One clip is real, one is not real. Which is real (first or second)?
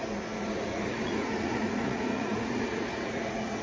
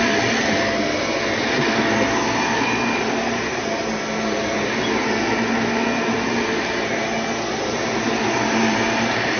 second